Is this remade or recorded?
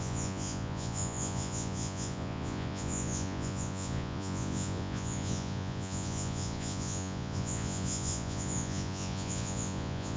remade